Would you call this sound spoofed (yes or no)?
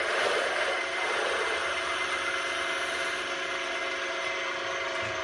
no